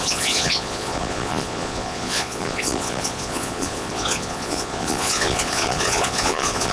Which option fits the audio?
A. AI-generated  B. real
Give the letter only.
A